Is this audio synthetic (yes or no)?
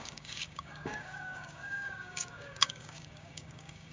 yes